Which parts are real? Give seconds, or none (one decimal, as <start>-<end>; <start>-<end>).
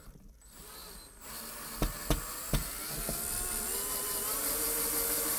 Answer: 0.8-4.0